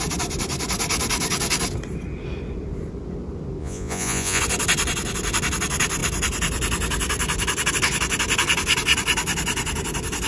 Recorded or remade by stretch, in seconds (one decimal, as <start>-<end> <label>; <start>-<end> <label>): 0.0-3.6 recorded; 3.6-4.4 remade; 4.4-10.3 recorded

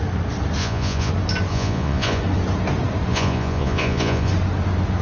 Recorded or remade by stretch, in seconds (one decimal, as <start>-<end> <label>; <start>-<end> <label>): 0.0-0.6 recorded; 0.6-1.1 remade; 1.1-1.5 recorded; 1.5-2.2 remade; 2.2-3.1 recorded; 3.1-4.3 remade; 4.3-5.0 recorded

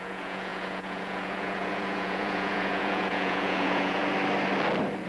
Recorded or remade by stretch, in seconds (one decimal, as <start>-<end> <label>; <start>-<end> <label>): 0.0-4.0 remade; 4.0-5.1 recorded

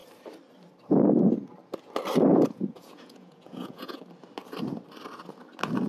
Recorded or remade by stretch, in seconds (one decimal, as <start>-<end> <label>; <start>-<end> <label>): 0.0-2.3 recorded; 2.3-4.0 remade; 4.0-5.9 recorded